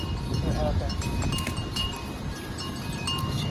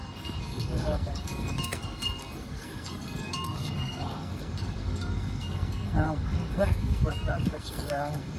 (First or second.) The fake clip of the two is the second